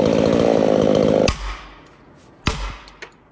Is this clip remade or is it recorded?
recorded